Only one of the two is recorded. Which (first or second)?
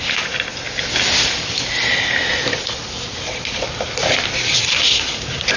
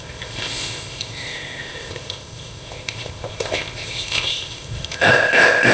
first